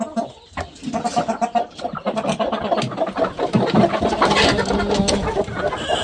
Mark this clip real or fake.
real